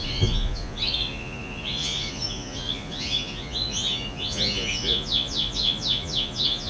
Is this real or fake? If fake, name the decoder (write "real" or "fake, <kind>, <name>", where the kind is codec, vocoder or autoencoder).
fake, vocoder, Vocos